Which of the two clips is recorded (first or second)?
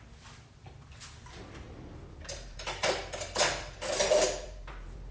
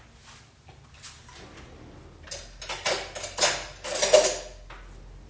second